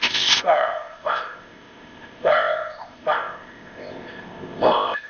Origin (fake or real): fake